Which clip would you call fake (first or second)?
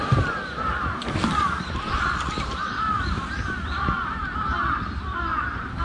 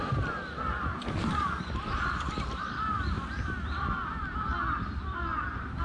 first